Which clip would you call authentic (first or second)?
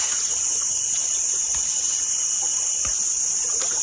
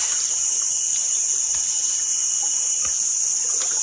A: second